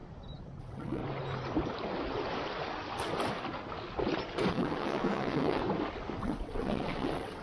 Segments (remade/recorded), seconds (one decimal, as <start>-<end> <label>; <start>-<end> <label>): 0.0-0.6 recorded; 0.6-1.0 remade; 1.0-4.5 recorded; 4.5-5.6 remade; 5.6-6.2 recorded; 6.2-7.4 remade